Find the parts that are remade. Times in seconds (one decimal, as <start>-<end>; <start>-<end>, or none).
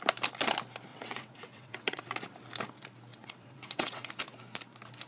0.9-2.0; 3.1-4.1